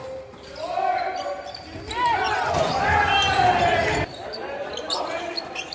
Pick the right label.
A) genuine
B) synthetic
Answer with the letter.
A